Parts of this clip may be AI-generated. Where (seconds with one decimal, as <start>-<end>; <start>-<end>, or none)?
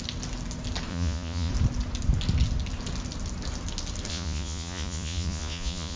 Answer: 0.9-1.5; 4.1-6.0